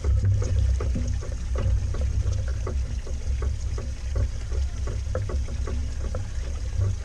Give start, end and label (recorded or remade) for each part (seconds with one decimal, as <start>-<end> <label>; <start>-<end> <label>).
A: 0.0-7.0 recorded